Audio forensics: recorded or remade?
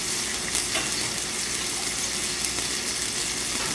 recorded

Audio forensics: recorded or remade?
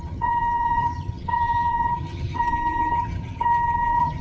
remade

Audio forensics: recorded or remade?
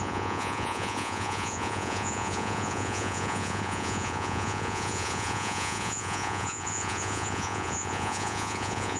remade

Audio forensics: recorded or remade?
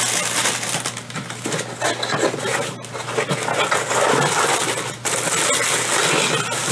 recorded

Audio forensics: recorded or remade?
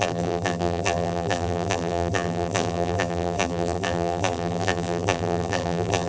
remade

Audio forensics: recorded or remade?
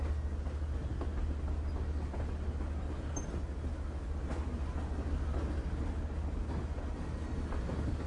recorded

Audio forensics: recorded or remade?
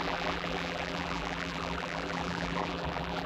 remade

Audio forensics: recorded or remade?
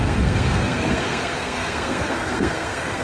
remade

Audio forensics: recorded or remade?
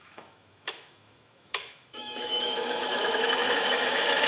remade